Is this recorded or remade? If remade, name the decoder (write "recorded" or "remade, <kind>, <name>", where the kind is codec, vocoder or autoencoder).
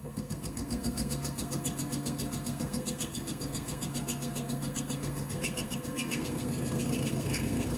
remade, codec, SNAC